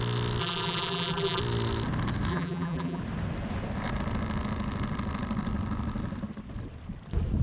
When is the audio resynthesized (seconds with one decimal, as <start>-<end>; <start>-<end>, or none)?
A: 0.4-1.4; 2.3-3.0